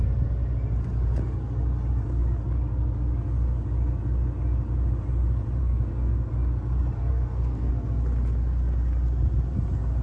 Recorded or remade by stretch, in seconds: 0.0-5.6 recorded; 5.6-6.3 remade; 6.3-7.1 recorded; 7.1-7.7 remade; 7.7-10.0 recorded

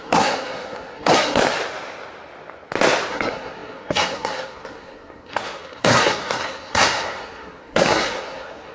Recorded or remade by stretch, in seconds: 0.0-1.4 remade; 1.4-3.1 recorded; 3.1-8.7 remade

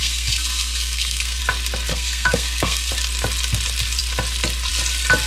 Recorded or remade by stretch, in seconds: 0.0-1.4 remade; 1.4-1.9 recorded; 1.9-2.9 remade; 2.9-5.3 recorded

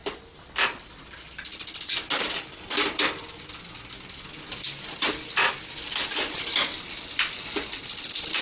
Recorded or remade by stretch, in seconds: 0.0-8.4 recorded

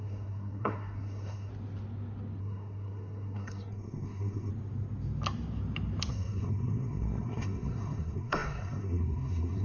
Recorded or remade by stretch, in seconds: 0.0-1.5 remade; 1.5-2.4 recorded; 2.4-4.5 remade; 4.5-6.1 recorded; 6.1-9.6 remade

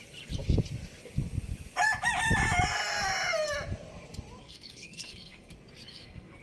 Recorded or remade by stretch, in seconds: 0.0-4.4 recorded; 4.4-5.5 remade; 5.5-5.9 recorded; 5.9-6.4 remade

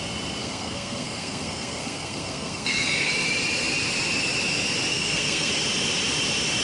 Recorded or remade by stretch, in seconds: 0.0-0.4 recorded; 0.4-3.1 remade; 3.1-4.9 recorded; 4.9-5.5 remade; 5.5-6.6 recorded

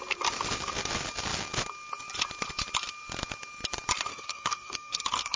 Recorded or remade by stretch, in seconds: 0.0-4.1 recorded; 4.1-5.4 remade